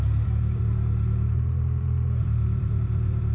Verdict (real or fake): fake